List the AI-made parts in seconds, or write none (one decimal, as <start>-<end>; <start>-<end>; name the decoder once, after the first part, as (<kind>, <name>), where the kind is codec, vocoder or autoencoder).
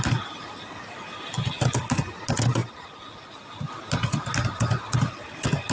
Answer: none